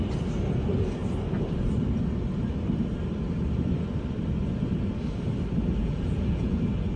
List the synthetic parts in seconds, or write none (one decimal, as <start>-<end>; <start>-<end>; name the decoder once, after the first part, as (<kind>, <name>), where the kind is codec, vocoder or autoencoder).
5.8-6.6 (vocoder, Vocos)